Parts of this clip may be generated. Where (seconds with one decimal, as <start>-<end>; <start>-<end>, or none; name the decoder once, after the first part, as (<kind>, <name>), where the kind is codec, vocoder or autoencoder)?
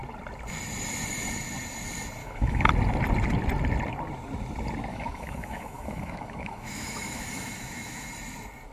2.2-2.7 (autoencoder, DAC-VAE); 4.9-8.1